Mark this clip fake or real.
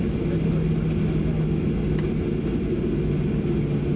real